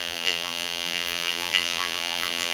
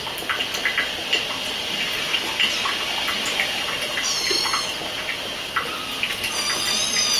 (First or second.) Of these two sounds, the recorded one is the second